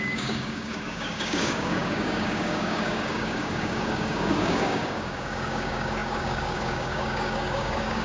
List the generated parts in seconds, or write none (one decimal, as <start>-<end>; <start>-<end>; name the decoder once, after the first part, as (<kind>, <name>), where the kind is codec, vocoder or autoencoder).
0.0-8.0 (codec, DAC)

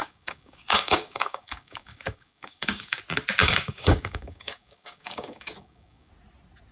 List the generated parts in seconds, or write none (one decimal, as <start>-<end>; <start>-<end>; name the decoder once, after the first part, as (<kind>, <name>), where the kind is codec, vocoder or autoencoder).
0.0-3.0 (codec, DAC); 3.4-6.1